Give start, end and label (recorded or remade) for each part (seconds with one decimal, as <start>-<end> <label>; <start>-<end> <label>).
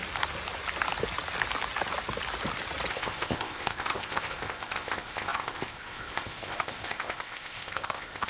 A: 0.0-2.9 recorded; 2.9-8.3 remade